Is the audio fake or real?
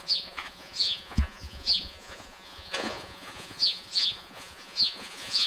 fake